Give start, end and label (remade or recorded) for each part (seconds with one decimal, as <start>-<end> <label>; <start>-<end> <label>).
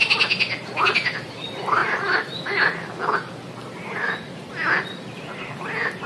0.0-6.1 recorded